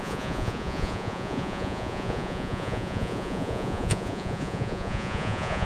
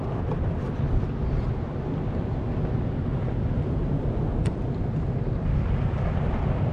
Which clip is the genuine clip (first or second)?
second